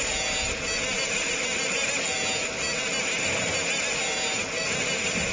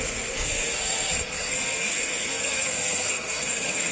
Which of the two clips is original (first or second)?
first